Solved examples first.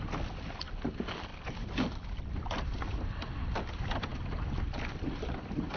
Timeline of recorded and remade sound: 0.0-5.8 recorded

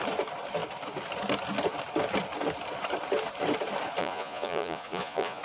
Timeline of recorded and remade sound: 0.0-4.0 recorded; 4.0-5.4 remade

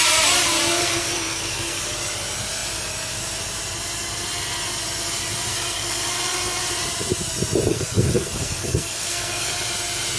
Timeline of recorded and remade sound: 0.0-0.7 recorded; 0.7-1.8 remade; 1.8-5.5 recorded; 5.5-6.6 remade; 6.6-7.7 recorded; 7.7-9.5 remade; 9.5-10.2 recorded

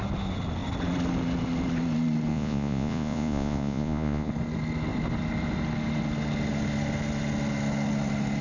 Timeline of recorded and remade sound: 0.0-2.3 recorded; 2.3-4.3 remade; 4.3-8.4 recorded

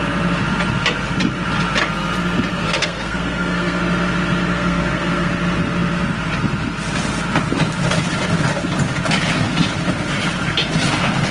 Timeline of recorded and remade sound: 0.0-2.5 recorded; 2.5-3.8 remade; 3.8-4.5 recorded; 4.5-5.3 remade; 5.3-11.3 recorded

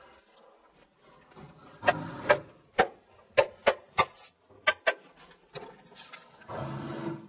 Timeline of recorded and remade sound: 0.0-7.3 recorded

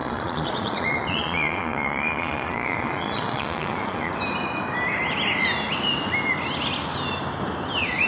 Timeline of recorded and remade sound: 0.0-4.1 remade; 4.1-8.1 recorded